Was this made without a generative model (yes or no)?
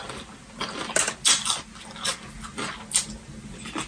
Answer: yes